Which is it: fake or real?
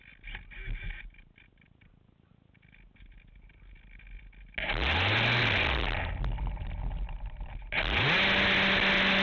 real